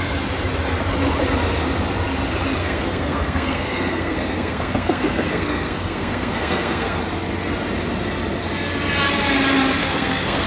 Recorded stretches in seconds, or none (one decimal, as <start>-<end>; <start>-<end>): 0.0-2.6; 7.0-9.8